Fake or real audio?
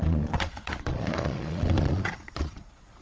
fake